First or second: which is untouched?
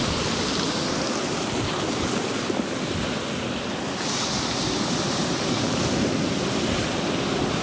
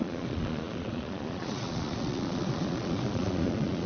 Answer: first